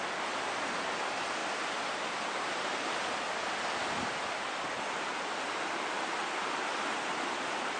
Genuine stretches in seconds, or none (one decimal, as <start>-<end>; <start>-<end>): 0.0-7.8